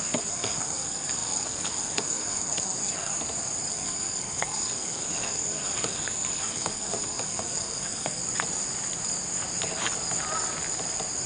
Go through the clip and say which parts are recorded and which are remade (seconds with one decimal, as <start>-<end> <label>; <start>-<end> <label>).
0.0-3.1 remade; 3.1-3.7 recorded; 3.7-8.2 remade; 8.2-11.3 recorded